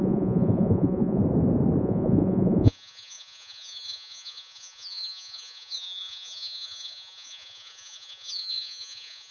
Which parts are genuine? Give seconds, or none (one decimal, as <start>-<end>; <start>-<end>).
1.2-1.8